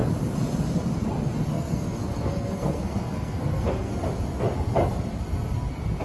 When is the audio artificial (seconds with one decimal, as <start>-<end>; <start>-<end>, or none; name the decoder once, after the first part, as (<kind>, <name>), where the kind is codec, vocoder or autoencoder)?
1.5-3.9 (codec, SNAC)

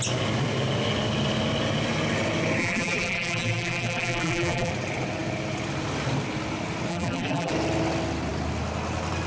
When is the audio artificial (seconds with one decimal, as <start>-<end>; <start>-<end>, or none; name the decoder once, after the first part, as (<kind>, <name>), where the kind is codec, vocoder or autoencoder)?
2.6-4.7 (vocoder, BigVGAN v2); 6.9-7.5

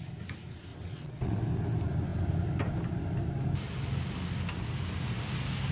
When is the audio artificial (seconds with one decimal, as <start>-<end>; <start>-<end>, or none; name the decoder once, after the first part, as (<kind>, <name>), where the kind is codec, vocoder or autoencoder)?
0.7-1.4 (vocoder, WaveNeXt)

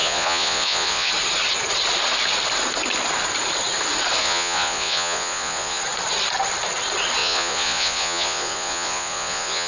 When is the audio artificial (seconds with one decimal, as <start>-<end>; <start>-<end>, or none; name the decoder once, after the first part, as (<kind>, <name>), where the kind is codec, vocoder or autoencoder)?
0.0-1.1 (vocoder, Vocos); 4.2-5.8; 7.2-9.7